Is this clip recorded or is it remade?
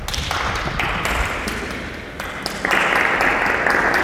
recorded